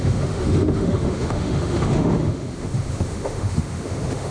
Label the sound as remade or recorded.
remade